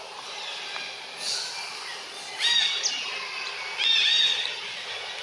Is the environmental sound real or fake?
real